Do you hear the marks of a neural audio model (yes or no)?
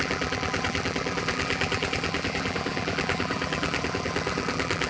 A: yes